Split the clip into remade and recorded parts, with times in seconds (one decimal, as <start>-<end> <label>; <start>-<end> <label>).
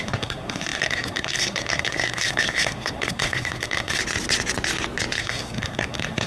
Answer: 0.0-4.0 remade; 4.0-5.2 recorded; 5.2-6.3 remade